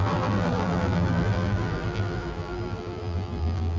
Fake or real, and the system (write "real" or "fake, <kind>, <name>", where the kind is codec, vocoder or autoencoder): fake, vocoder, BigVGAN v2